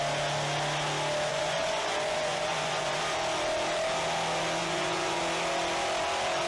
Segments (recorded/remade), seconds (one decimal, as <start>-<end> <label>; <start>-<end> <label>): 0.0-1.3 recorded; 1.3-3.0 remade; 3.0-4.6 recorded; 4.6-5.2 remade; 5.2-6.5 recorded